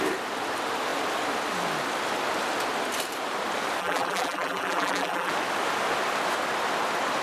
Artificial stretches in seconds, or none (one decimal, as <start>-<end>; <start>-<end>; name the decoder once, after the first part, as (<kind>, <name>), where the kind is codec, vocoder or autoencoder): 3.8-5.3 (vocoder, BigVGAN v2)